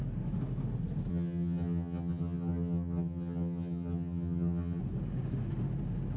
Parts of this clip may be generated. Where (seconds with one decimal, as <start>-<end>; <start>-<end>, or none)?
1.1-4.8